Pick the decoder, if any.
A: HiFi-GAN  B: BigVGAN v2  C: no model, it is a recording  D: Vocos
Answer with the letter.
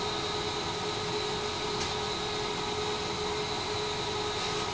C